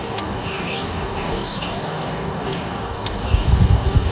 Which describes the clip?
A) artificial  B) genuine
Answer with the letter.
A